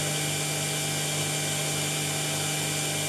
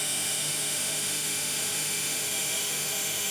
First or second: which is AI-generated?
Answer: second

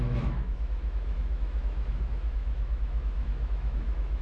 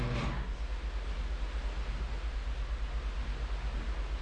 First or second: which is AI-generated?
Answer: first